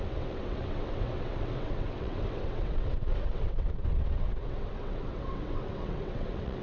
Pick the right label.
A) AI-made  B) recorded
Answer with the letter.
A